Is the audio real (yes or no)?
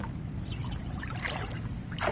yes